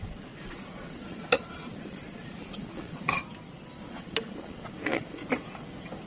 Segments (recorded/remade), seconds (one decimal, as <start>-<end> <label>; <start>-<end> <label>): 0.0-3.2 remade; 3.2-3.8 recorded; 3.8-5.2 remade; 5.2-6.1 recorded